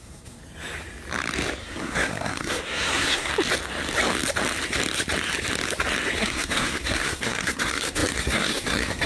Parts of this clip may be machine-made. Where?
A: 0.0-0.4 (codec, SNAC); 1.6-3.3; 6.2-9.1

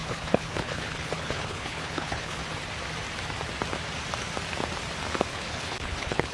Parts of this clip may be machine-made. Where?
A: 0.0-2.4 (codec, HILCodec); 5.3-6.3

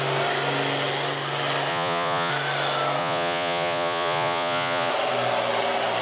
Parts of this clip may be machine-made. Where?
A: 1.7-2.3 (vocoder, Vocos); 3.0-4.9

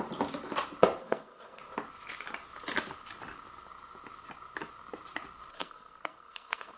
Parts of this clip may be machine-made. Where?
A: 1.0-1.6 (codec, SNAC); 5.5-6.8

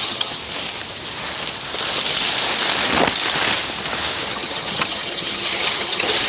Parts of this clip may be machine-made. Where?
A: 0.0-0.4 (vocoder, HiFi-GAN); 4.2-6.3

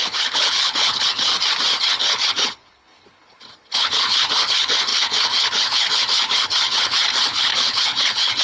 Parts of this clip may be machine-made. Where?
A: 0.0-1.3 (codec, HILCodec); 1.8-8.4